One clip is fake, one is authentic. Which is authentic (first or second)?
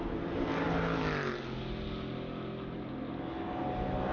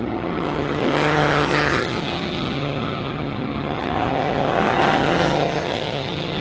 first